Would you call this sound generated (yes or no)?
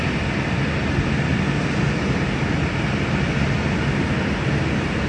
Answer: no